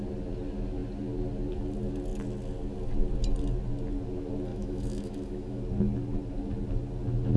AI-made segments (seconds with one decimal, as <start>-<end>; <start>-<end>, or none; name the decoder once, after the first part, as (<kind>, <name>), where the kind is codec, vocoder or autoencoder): 4.5-5.6 (autoencoder, DAC-VAE)